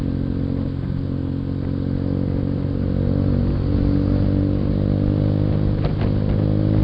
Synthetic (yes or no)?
no